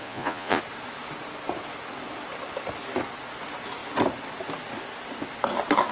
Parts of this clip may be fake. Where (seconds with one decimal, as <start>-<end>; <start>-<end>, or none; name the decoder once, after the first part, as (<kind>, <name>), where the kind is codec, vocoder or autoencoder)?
0.0-0.6 (vocoder, Vocos)